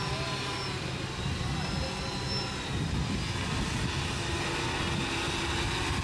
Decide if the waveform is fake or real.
real